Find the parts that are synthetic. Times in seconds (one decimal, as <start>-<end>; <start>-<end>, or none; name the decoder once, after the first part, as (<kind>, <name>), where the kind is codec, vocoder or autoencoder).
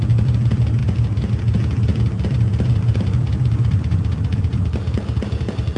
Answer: none